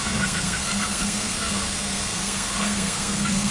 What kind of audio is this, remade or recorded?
remade